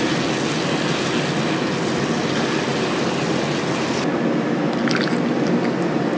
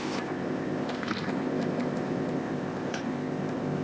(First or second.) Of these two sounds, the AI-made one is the second